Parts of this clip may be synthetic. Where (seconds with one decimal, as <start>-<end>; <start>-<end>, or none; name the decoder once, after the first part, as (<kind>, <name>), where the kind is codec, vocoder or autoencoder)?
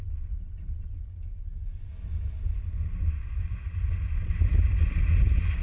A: none